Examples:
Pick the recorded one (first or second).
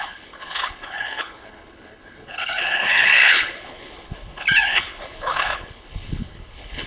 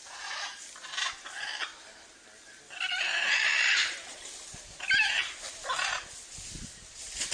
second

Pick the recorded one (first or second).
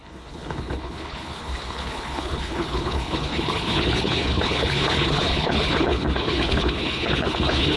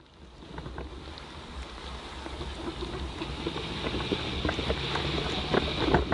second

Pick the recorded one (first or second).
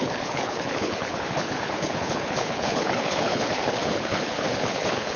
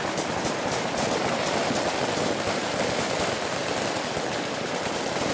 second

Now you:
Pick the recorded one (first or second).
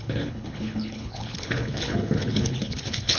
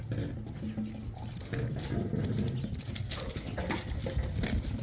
second